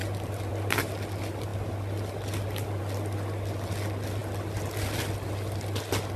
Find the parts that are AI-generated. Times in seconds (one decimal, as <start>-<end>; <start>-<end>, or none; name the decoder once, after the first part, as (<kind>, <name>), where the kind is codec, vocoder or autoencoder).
none